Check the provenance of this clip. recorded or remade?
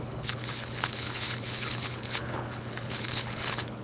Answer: remade